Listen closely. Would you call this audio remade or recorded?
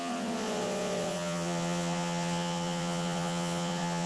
remade